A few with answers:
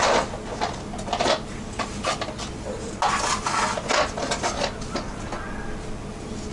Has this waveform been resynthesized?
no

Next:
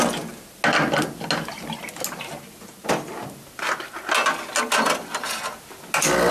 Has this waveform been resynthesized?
no